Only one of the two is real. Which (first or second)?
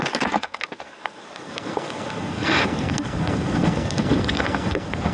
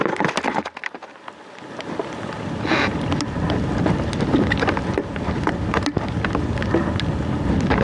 second